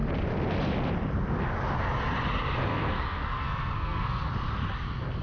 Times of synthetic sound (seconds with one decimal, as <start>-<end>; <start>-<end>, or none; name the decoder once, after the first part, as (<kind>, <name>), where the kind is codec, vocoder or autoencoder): 2.7-4.3 (codec, SNAC)